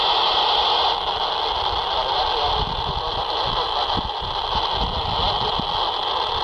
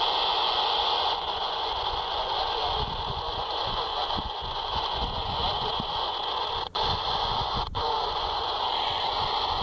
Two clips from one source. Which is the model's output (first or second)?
second